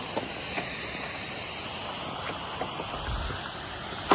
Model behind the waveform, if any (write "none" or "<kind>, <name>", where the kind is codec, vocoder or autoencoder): none